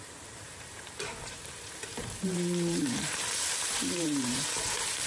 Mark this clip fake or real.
fake